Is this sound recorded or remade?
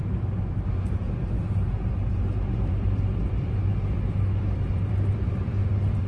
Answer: remade